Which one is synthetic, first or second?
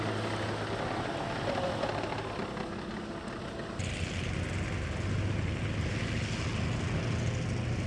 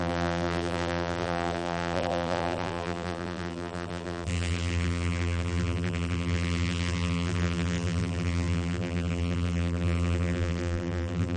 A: second